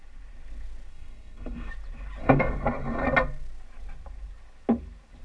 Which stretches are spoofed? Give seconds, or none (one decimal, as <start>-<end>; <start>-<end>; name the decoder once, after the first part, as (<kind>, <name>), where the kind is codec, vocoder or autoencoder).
0.9-1.7 (codec, SNAC); 2.2-3.0